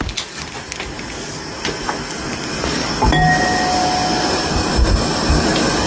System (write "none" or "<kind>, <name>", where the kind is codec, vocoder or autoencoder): none